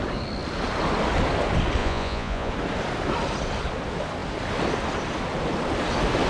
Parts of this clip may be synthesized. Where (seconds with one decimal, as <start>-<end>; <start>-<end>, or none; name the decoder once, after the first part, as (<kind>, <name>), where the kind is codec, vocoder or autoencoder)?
1.8-2.5 (vocoder, Vocos)

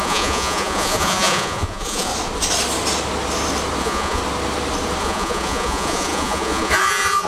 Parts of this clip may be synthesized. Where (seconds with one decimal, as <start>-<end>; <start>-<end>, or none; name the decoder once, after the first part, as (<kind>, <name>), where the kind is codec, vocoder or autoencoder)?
0.0-2.1 (vocoder, Vocos); 3.8-4.2; 5.0-7.3

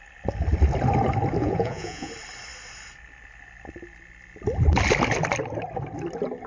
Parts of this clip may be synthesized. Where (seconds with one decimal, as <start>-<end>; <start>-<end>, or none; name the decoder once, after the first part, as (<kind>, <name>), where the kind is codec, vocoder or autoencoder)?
1.4-2.1 (vocoder, Vocos)